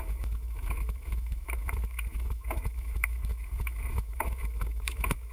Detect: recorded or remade remade